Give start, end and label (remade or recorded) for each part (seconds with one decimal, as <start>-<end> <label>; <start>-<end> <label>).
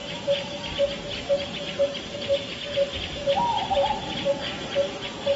0.0-5.4 recorded